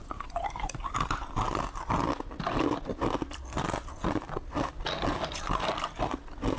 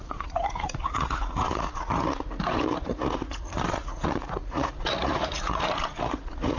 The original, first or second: first